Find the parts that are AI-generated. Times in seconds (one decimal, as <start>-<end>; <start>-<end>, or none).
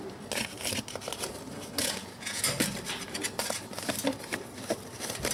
1.8-2.4